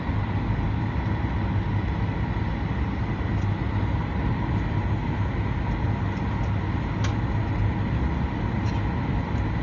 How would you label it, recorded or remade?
recorded